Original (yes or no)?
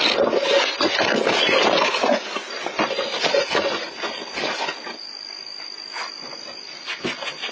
yes